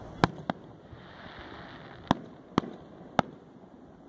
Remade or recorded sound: recorded